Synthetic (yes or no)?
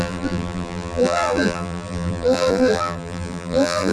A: yes